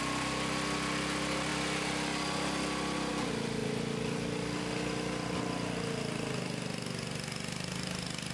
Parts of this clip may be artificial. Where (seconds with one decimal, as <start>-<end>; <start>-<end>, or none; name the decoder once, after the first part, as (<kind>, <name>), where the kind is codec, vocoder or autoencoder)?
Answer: none